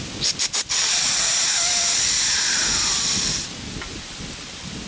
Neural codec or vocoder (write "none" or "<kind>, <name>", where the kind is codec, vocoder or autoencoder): none